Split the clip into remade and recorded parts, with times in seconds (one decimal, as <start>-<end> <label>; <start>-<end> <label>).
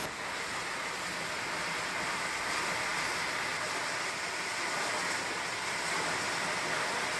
0.0-7.2 recorded